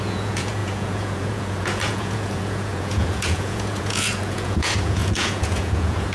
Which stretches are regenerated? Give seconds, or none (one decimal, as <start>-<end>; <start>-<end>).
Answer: 0.0-6.1